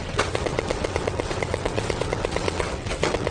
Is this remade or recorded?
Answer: remade